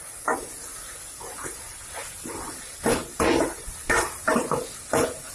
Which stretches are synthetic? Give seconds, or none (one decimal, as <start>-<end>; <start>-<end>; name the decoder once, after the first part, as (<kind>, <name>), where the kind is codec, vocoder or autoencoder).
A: none